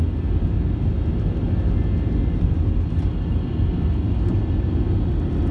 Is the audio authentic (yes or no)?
yes